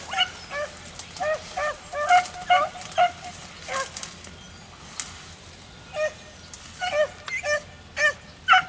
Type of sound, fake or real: real